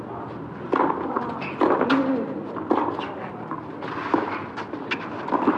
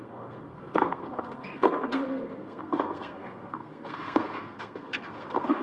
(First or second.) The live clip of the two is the first